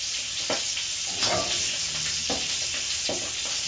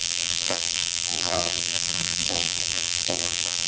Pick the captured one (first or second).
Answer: first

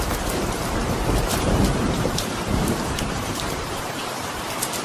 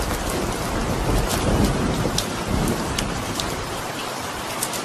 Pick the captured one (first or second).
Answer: second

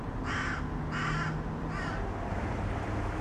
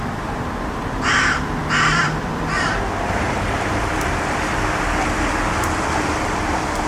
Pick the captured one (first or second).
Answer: first